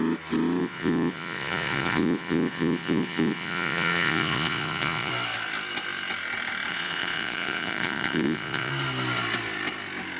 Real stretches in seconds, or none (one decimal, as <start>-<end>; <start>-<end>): 0.0-0.6; 5.1-6.7; 8.7-10.2